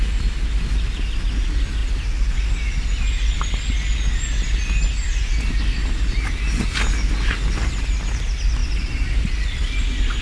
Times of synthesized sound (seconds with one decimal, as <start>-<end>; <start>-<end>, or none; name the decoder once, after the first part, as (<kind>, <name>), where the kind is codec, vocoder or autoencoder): none